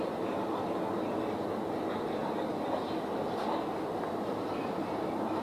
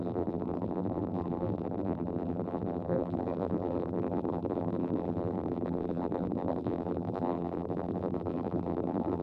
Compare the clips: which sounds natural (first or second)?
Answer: first